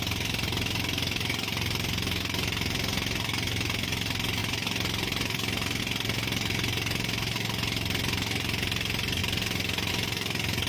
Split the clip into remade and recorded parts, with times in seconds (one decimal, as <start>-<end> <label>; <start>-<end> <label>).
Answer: 0.0-10.7 recorded